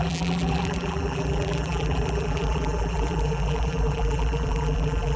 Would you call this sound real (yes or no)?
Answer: no